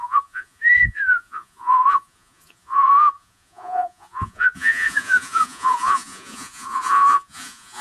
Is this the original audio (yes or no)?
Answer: no